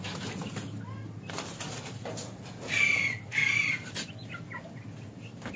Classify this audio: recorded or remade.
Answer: recorded